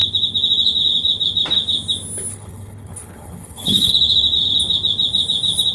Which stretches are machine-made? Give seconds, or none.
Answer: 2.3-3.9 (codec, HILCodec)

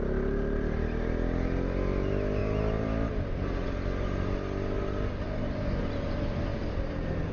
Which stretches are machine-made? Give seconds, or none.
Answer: none

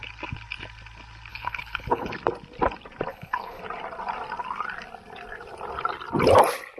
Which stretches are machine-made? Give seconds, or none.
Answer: 1.3-2.1 (codec, HILCodec); 3.1-3.6

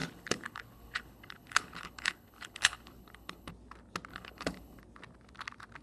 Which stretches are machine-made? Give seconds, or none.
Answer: 0.0-3.5 (codec, HILCodec); 4.1-4.8